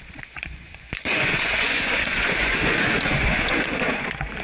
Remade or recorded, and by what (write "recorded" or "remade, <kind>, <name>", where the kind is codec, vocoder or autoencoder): remade, vocoder, Vocos